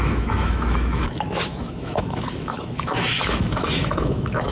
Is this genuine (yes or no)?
no